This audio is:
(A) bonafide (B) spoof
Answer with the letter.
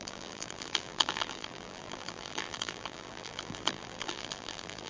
B